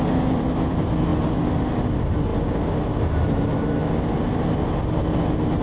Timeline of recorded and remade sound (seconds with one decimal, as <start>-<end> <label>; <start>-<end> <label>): 0.0-5.6 recorded